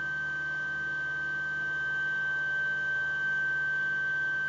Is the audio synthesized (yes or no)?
no